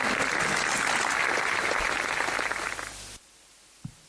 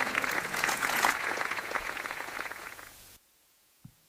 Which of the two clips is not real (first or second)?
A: second